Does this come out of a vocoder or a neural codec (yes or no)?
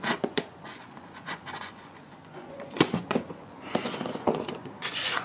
yes